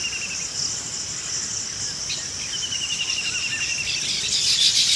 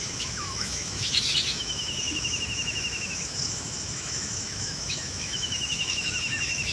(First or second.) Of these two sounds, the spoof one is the second